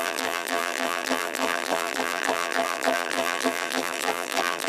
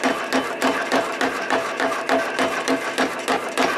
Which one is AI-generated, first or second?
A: first